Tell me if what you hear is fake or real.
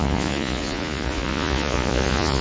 fake